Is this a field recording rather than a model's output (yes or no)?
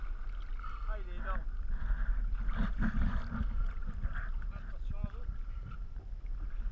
yes